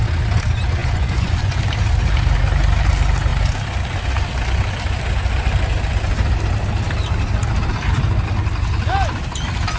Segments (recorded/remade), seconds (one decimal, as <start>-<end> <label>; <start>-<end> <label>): 0.0-0.8 recorded; 0.8-1.6 remade; 1.6-9.8 recorded